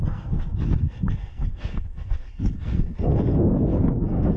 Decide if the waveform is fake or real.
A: fake